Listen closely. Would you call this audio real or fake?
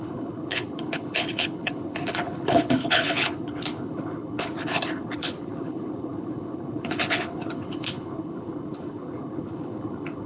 fake